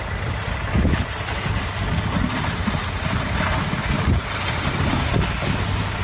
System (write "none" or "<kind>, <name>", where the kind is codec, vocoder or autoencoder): none